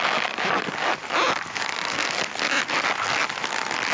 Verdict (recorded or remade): recorded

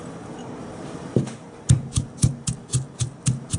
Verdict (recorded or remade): remade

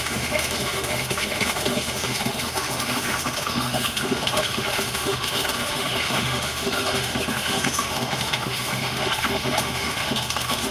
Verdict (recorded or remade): remade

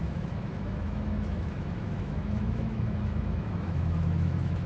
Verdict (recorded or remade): remade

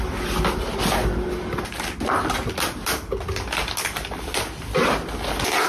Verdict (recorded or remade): recorded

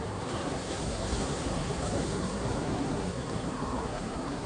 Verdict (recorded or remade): remade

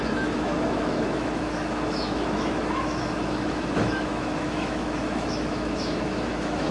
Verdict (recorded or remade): remade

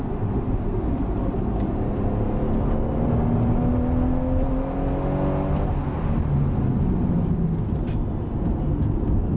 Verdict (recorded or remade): recorded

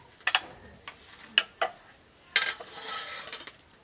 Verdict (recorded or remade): recorded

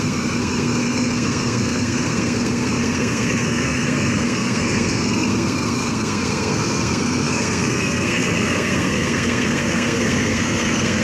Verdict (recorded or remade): remade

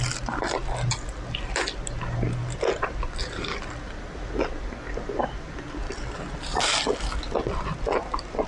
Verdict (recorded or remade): recorded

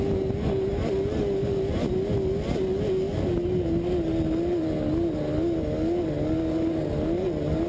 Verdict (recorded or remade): recorded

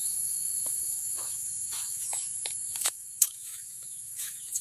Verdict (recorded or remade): remade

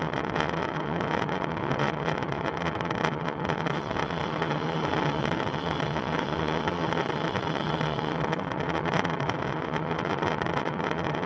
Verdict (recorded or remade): remade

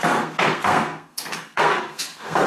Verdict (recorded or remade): remade